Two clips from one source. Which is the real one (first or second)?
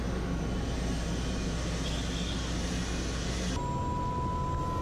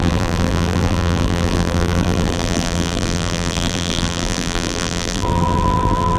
first